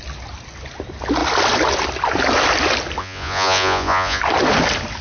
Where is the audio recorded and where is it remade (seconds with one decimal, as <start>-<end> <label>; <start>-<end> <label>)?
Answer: 0.0-3.0 recorded; 3.0-4.2 remade; 4.2-5.0 recorded